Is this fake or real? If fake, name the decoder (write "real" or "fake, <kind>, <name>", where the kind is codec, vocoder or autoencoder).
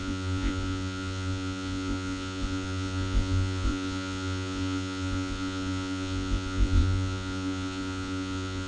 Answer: fake, vocoder, Vocos